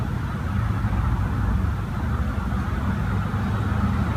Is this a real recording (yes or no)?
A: yes